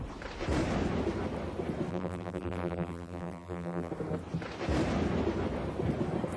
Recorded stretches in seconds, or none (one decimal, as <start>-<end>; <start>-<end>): 0.0-1.9; 3.9-6.4